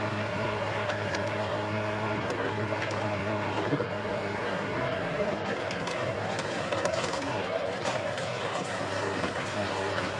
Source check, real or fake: fake